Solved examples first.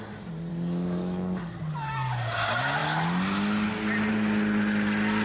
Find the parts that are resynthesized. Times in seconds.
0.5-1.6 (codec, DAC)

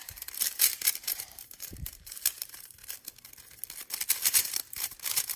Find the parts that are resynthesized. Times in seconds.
0.0-2.8 (vocoder, BigVGAN v2); 4.2-5.4

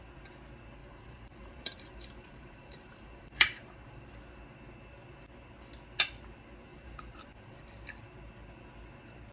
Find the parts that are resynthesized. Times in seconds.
0.8-4.1 (vocoder, BigVGAN v2); 6.7-7.6

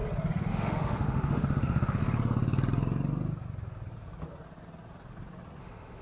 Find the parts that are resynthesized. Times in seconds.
0.5-2.0 (autoencoder, DAC-VAE); 5.6-6.0

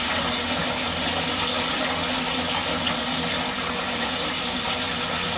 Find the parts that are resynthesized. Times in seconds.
none

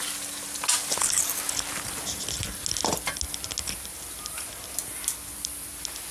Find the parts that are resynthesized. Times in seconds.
none

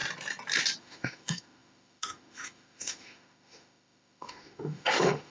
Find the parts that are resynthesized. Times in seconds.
0.8-5.3 (autoencoder, DAC-VAE)